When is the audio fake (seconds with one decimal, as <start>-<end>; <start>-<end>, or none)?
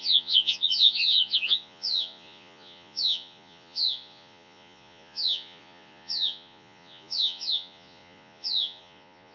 0.0-9.3